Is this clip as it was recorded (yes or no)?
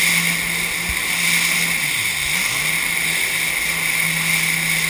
yes